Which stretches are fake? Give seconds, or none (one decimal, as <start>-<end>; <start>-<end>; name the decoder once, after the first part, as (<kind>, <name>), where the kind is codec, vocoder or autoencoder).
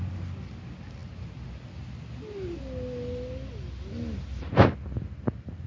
none